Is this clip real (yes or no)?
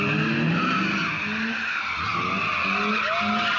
yes